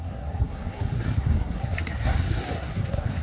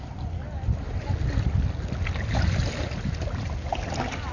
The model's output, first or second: first